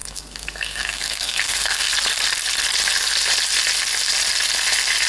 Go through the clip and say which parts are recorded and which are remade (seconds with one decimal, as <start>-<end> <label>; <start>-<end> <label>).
0.0-1.9 remade; 1.9-5.1 recorded